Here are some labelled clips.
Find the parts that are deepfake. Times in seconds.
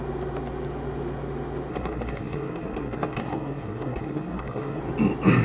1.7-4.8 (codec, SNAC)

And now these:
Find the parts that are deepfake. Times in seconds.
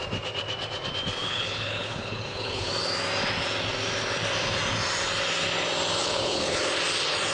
1.2-2.7 (codec, HILCodec); 6.0-6.6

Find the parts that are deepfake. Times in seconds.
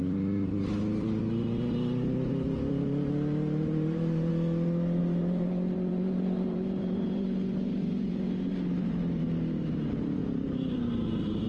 0.0-4.3 (vocoder, BigVGAN v2); 5.0-11.5